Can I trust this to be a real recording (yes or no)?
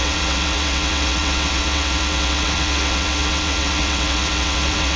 no